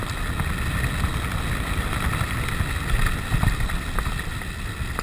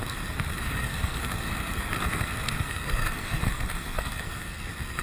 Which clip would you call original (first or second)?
first